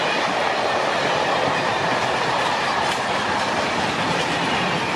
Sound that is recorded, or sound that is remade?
recorded